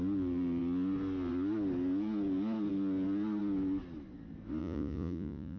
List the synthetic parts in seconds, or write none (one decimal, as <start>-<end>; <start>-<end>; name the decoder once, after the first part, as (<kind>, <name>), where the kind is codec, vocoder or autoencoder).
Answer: 4.6-5.6 (vocoder, Vocos)